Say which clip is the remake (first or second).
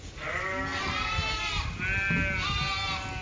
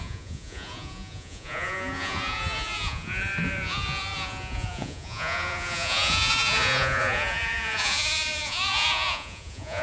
second